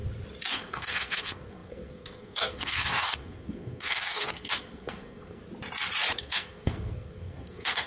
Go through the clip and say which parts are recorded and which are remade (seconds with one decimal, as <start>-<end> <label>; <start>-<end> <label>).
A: 0.0-0.5 recorded; 0.5-5.4 remade; 5.4-6.2 recorded; 6.2-7.9 remade